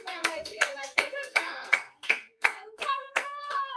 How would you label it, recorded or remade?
remade